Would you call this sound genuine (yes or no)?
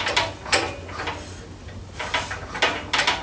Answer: yes